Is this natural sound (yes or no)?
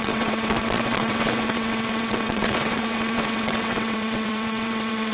no